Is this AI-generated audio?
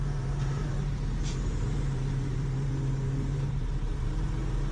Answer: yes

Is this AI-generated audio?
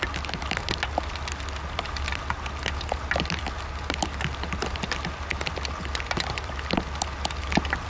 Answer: no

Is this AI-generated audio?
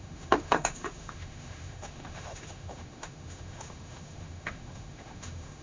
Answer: yes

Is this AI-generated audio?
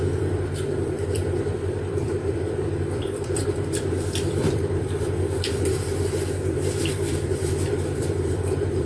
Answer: yes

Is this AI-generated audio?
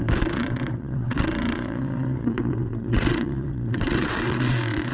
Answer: yes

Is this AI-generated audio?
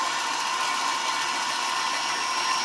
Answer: no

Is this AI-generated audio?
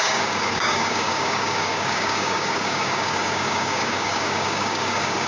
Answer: yes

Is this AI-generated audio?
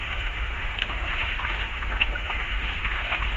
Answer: yes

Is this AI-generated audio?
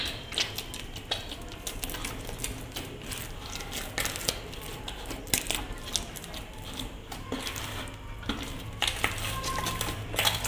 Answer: no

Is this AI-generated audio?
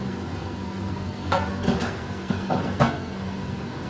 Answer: yes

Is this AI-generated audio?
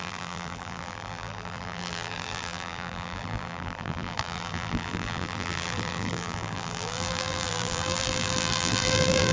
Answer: yes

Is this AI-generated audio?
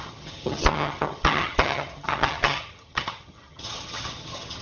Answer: yes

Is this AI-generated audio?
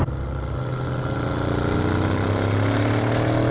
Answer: no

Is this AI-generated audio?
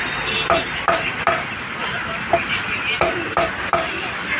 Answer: no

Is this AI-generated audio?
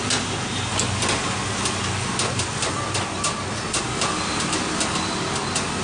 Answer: no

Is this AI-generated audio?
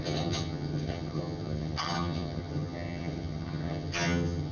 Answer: yes